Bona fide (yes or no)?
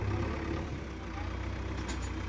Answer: yes